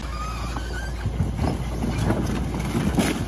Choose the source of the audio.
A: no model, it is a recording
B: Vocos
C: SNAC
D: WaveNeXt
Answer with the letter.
A